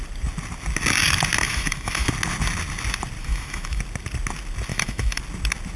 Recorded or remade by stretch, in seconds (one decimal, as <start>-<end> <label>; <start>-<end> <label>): 0.0-1.4 recorded; 1.4-2.1 remade; 2.1-3.2 recorded; 3.2-3.8 remade; 3.8-4.7 recorded; 4.7-5.2 remade; 5.2-5.8 recorded